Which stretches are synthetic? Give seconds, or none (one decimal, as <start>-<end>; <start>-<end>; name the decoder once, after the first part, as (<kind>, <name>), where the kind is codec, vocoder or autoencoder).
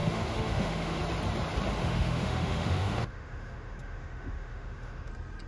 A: 0.0-1.0 (autoencoder, DAC-VAE); 1.8-5.1